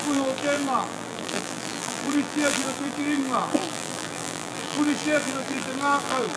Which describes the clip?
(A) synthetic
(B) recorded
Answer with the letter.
A